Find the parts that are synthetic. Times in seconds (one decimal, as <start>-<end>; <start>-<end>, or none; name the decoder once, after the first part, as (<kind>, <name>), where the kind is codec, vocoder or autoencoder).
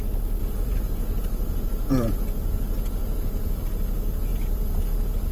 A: 0.4-3.6 (vocoder, Vocos); 4.3-4.8